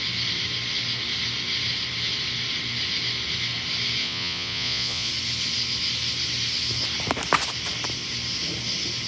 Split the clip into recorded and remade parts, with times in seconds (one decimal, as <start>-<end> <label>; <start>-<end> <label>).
0.0-4.0 recorded; 4.0-5.1 remade; 5.1-9.1 recorded